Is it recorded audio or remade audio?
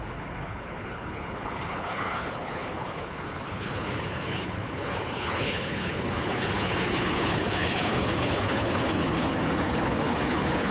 remade